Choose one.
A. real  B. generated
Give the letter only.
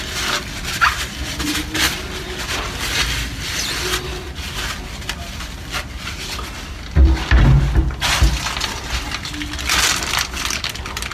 A